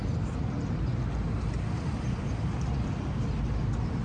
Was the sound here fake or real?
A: real